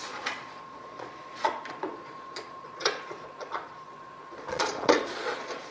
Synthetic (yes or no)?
yes